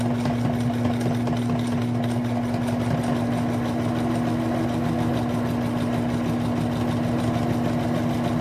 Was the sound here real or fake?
real